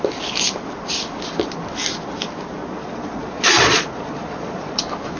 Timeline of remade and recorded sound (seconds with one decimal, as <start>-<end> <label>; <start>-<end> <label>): 0.0-2.6 recorded; 2.6-4.8 remade; 4.8-5.2 recorded